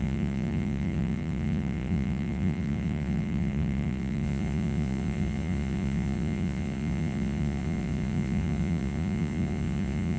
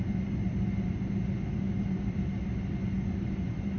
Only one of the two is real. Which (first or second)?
second